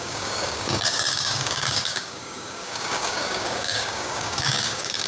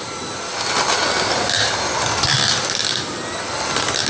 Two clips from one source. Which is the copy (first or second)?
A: first